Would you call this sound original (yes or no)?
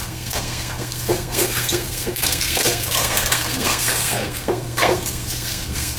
no